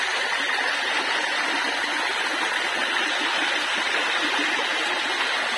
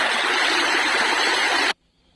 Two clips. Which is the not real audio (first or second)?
second